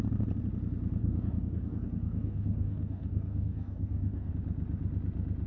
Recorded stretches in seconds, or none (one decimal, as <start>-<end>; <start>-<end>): 0.0-1.0; 4.3-5.5